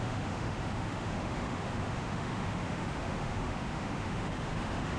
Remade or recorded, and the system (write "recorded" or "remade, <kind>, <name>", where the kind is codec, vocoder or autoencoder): remade, autoencoder, DAC-VAE